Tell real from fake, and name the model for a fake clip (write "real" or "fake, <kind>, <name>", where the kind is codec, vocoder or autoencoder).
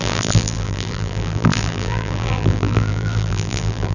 fake, vocoder, BigVGAN v2